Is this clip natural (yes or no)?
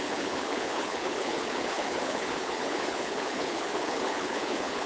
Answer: no